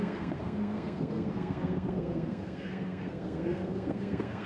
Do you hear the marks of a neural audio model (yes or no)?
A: yes